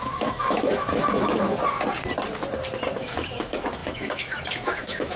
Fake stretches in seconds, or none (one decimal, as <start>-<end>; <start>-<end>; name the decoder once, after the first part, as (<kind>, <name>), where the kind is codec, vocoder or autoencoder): 0.0-1.6 (autoencoder, DAC-VAE); 3.0-5.2